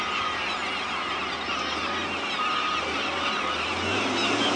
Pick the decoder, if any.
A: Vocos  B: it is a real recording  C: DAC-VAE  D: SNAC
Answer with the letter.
B